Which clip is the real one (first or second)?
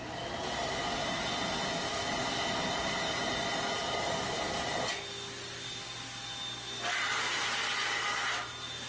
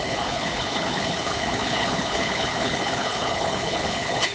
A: first